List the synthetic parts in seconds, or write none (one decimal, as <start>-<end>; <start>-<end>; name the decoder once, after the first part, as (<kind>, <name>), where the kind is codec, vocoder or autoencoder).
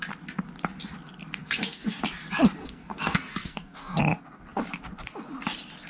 1.4-2.0 (codec, SNAC); 2.6-4.0